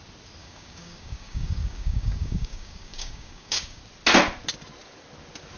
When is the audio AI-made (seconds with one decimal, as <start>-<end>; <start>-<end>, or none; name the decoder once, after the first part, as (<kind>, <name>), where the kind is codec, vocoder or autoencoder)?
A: 0.4-3.8 (codec, DAC)